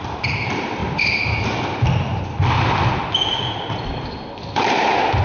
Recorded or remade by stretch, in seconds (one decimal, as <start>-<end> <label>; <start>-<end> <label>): 0.0-0.8 remade; 0.8-3.0 recorded; 3.0-5.2 remade